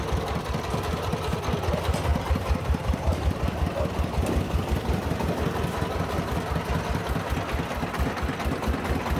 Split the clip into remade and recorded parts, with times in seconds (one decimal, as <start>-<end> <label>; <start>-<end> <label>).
0.0-2.1 recorded; 2.1-3.4 remade; 3.4-9.2 recorded